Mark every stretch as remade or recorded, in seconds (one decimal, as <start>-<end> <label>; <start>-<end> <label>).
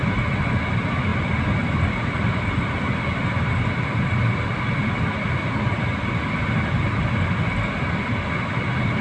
0.0-9.0 recorded